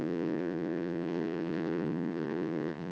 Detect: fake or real fake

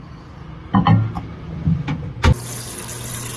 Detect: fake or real real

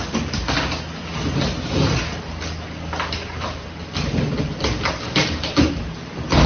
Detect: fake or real real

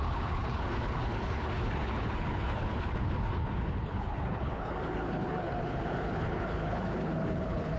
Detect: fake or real fake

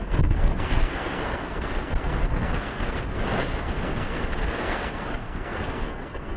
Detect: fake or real fake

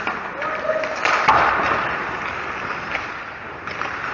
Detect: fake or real real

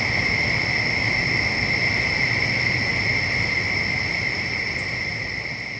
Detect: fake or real real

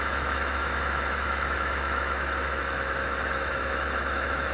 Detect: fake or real fake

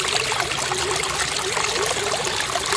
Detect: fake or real real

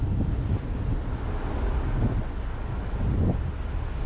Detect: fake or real real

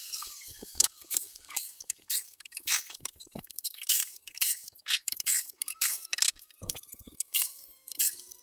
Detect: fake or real fake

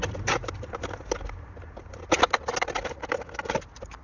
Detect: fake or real real